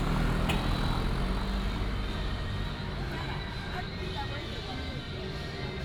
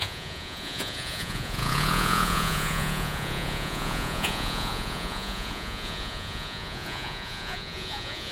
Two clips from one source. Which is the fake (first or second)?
second